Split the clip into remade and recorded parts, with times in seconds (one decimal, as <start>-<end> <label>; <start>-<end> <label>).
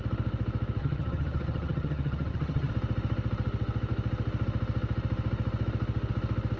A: 0.0-0.8 recorded; 0.8-2.7 remade; 2.7-6.6 recorded